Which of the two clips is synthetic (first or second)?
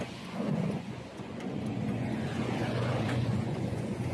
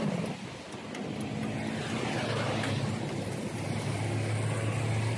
first